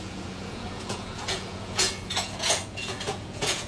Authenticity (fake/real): fake